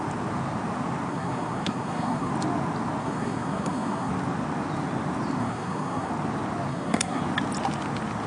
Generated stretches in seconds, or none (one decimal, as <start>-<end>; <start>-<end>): 1.1-2.3; 3.0-4.1; 5.4-6.1; 6.7-7.2